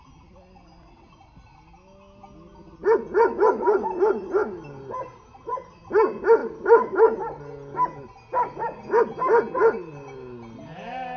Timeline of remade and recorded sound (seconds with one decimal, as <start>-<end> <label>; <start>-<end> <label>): 0.0-11.2 recorded